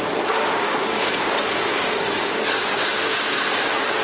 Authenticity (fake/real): fake